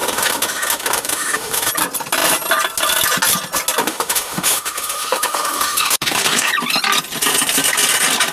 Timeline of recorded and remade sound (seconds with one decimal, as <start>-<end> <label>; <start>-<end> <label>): 0.0-1.7 remade; 1.7-3.8 recorded; 3.8-6.5 remade; 6.5-8.3 recorded